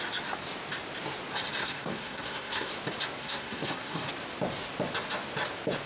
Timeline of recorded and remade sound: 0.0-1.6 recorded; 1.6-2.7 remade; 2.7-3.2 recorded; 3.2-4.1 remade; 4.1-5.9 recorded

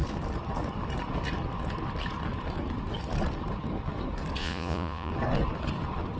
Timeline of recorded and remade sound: 0.0-4.4 recorded; 4.4-5.1 remade; 5.1-6.2 recorded

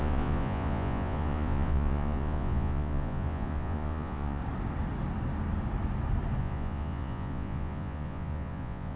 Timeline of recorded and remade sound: 0.0-4.4 remade; 4.4-6.4 recorded; 6.4-9.0 remade

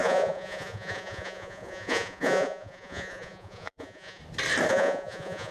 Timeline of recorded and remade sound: 0.0-4.2 remade; 4.2-4.7 recorded; 4.7-5.5 remade

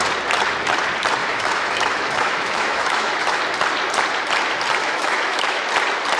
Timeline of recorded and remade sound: 0.0-1.2 recorded; 1.2-3.4 remade; 3.4-4.8 recorded; 4.8-5.6 remade; 5.6-6.2 recorded